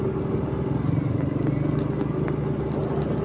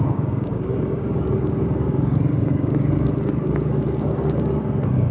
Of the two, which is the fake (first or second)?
second